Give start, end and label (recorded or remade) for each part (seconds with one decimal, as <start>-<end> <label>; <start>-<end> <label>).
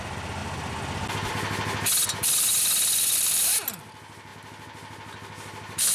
0.0-5.9 recorded